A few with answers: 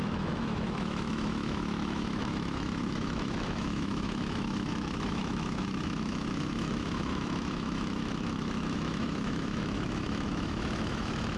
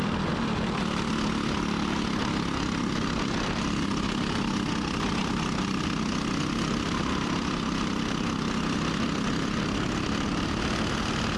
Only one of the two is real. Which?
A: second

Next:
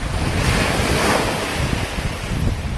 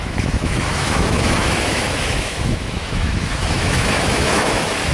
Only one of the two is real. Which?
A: first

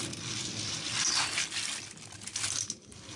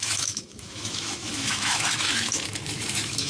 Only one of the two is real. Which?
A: first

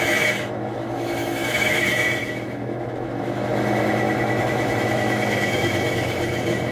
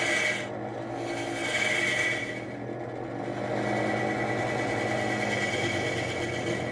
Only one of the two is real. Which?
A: second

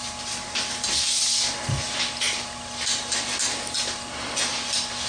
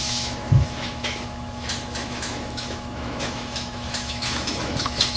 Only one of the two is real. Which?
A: first